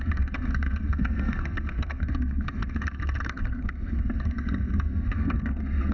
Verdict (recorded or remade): remade